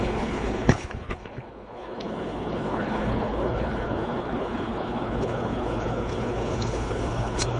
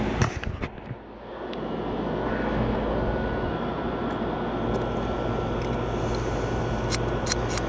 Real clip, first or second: second